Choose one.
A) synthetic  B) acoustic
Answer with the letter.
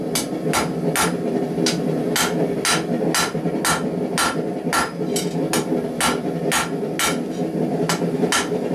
B